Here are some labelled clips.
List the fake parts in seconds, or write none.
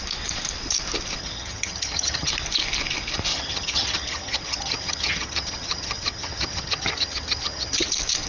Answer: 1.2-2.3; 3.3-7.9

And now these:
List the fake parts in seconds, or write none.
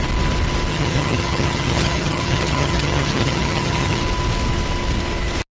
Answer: 0.7-4.0